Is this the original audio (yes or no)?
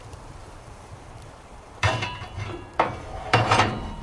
no